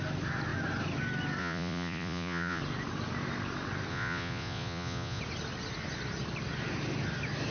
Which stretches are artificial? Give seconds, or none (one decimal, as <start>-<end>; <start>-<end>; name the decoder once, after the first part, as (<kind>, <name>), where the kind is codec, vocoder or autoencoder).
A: 1.4-2.6 (vocoder, Vocos); 3.9-5.2